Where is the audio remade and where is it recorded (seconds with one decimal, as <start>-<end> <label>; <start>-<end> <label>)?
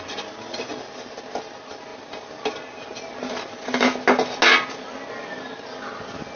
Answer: 0.0-6.4 recorded